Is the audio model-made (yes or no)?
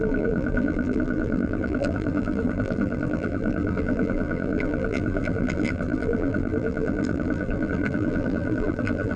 yes